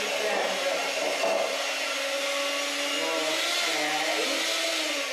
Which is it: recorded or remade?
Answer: recorded